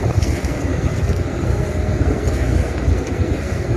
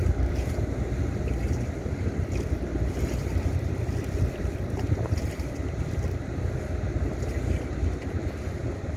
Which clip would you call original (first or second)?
second